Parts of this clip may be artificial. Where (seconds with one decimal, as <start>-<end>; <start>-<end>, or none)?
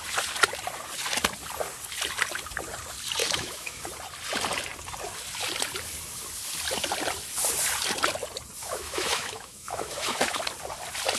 3.2-3.8; 8.6-10.4